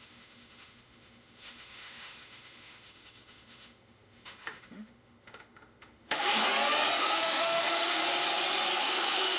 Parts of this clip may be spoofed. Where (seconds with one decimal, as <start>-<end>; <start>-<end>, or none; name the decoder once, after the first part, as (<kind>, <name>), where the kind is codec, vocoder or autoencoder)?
0.0-6.4 (autoencoder, DAC-VAE); 7.0-8.0; 8.8-9.4